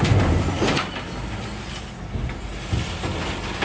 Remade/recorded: recorded